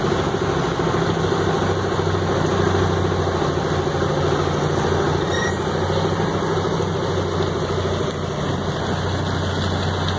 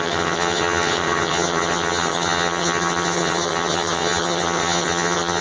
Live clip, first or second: first